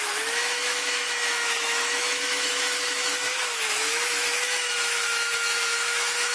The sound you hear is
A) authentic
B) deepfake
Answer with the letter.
B